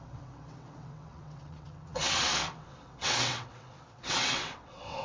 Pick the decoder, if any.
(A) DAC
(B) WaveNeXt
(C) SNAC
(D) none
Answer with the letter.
B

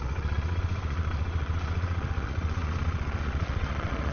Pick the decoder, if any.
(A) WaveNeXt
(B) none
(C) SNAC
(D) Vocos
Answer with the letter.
D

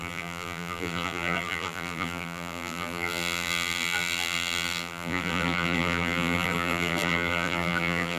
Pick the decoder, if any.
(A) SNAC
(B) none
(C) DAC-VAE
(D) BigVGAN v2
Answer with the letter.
D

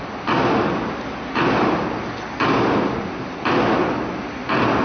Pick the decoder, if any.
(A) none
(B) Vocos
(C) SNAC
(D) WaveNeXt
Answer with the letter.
A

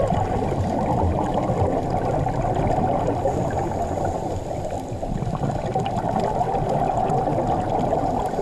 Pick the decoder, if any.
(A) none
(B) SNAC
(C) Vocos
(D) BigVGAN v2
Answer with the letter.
A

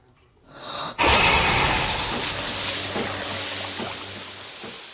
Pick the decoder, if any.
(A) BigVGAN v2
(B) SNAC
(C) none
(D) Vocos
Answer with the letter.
C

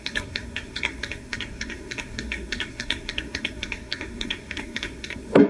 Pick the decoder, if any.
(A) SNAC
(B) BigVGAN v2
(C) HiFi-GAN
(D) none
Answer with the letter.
A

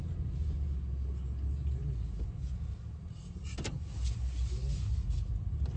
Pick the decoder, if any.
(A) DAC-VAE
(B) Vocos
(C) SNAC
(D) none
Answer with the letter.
D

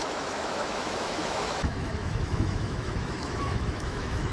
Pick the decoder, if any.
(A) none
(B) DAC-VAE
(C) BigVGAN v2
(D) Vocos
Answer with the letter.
B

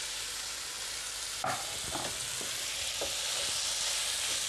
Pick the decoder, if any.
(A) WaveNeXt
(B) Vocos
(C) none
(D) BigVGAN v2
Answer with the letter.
C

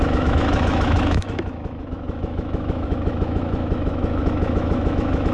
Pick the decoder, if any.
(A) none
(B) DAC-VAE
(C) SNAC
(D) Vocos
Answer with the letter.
B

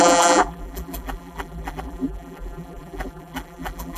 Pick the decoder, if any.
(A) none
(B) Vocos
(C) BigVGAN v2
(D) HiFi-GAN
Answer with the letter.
C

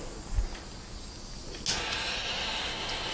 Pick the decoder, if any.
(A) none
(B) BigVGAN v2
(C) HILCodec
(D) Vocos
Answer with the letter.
A